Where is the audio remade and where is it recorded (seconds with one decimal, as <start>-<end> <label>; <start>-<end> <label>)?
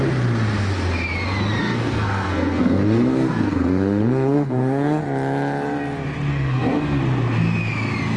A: 0.0-1.6 recorded; 1.6-5.0 remade; 5.0-6.3 recorded; 6.3-7.0 remade; 7.0-8.2 recorded